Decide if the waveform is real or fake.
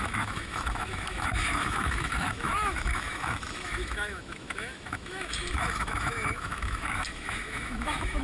fake